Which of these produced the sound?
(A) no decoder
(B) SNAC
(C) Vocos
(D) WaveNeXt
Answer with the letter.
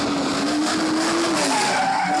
A